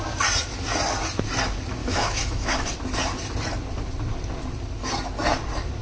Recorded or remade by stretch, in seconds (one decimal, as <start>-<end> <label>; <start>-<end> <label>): 0.0-1.8 recorded; 1.8-2.7 remade; 2.7-5.8 recorded